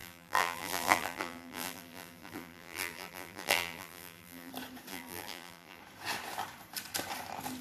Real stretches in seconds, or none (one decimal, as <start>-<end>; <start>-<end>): 4.5-4.9; 5.8-7.6